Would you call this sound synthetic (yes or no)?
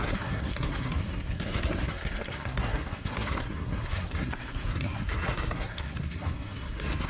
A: yes